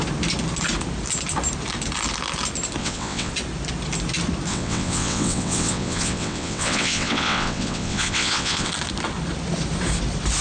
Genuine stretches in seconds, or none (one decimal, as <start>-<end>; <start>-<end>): 0.0-2.8; 3.3-4.5; 8.7-10.4

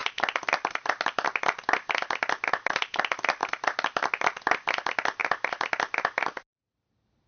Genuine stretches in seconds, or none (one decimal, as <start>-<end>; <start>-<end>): 0.0-7.3

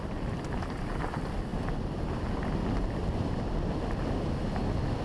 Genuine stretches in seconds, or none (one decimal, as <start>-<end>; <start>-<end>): 0.0-5.0